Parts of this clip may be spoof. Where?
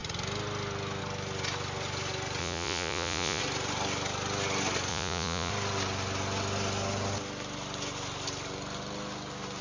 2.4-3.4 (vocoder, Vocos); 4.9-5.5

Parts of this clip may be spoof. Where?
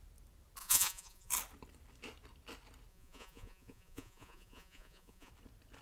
0.6-1.3 (vocoder, Vocos); 2.9-5.3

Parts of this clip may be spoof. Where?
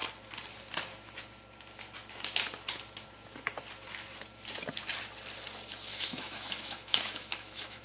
5.9-7.8 (autoencoder, DAC-VAE)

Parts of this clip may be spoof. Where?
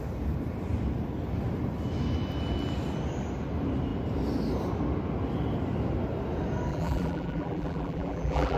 6.7-8.6 (vocoder, BigVGAN v2)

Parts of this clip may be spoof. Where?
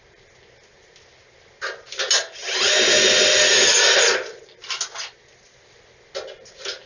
none